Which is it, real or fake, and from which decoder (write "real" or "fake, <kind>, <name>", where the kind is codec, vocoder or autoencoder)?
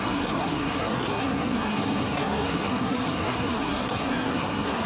fake, codec, SNAC